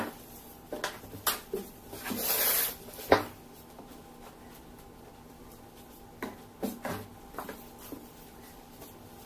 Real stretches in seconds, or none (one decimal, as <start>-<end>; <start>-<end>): 0.0-9.3